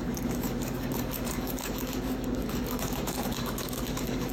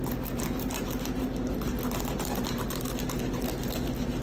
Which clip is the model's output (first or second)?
first